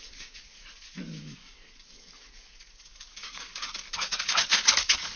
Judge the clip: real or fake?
fake